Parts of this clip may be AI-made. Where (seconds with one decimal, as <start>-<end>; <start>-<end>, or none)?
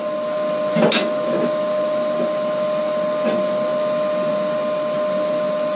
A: none